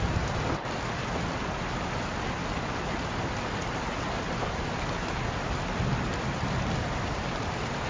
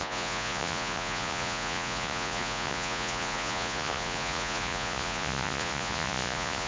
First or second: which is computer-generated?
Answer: second